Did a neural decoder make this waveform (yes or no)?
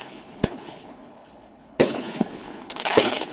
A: yes